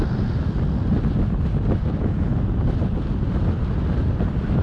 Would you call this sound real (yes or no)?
yes